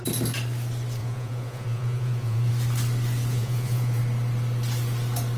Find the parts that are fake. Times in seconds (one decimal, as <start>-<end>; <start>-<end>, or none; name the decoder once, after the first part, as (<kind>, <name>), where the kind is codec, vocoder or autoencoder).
1.0-2.5 (vocoder, Vocos); 3.3-4.0